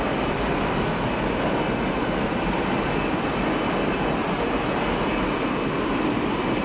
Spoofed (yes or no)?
no